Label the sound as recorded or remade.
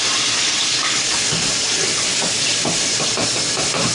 recorded